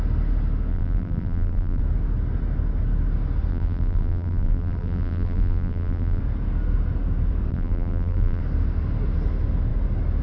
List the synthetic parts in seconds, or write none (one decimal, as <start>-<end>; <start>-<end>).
0.7-1.8; 3.5-6.2; 7.5-8.4